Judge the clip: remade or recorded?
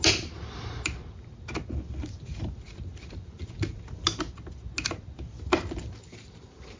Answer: recorded